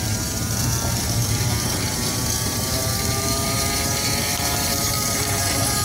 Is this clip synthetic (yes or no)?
yes